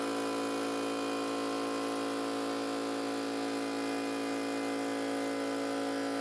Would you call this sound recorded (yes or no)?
yes